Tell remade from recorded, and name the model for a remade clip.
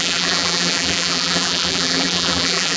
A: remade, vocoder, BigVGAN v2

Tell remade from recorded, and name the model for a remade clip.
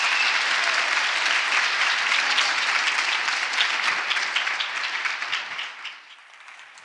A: remade, vocoder, BigVGAN v2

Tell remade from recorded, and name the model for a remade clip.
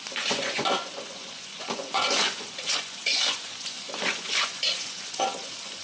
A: remade, vocoder, Vocos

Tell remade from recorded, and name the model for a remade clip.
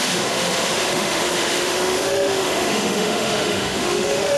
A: remade, autoencoder, DAC-VAE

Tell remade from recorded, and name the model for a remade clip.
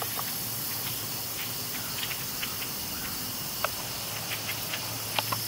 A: recorded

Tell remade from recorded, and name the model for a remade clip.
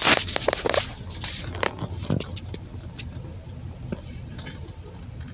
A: recorded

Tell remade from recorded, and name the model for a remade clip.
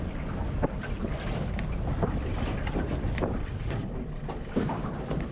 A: remade, vocoder, BigVGAN v2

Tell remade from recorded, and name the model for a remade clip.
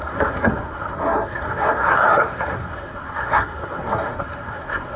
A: remade, codec, SNAC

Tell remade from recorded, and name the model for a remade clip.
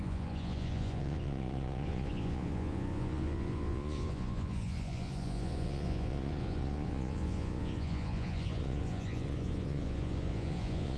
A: remade, vocoder, Vocos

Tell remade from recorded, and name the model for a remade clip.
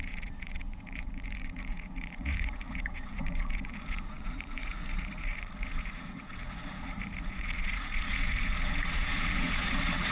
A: remade, vocoder, Vocos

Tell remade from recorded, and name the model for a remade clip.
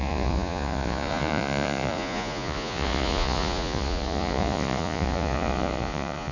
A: remade, vocoder, Vocos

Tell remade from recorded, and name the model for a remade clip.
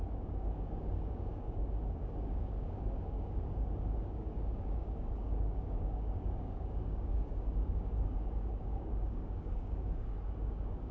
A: remade, codec, DAC